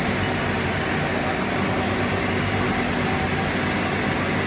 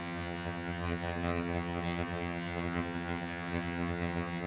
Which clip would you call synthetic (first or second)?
second